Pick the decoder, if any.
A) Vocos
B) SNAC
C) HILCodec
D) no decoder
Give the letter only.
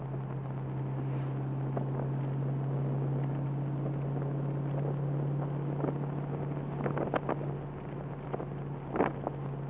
D